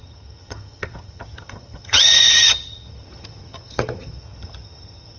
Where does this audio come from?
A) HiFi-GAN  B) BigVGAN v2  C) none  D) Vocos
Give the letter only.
A